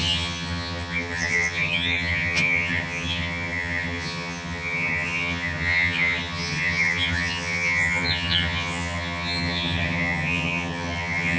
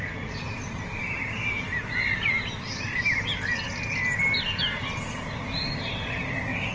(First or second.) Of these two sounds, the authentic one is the second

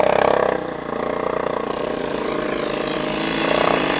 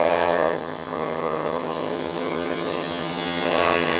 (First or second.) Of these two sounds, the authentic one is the first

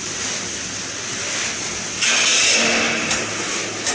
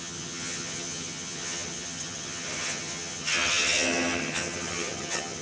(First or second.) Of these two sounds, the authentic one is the first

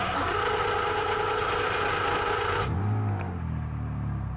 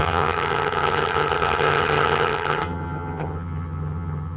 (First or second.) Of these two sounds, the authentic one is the first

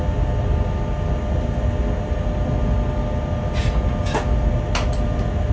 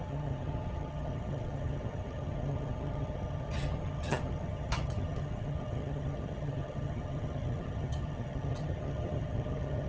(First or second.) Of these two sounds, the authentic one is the first